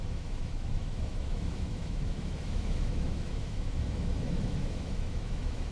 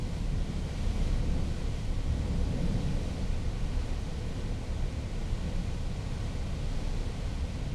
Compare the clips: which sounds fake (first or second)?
first